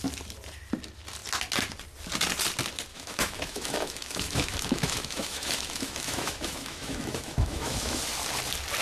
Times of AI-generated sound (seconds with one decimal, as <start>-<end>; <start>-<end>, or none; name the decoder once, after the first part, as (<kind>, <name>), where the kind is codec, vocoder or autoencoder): 2.9-8.0 (autoencoder, DAC-VAE)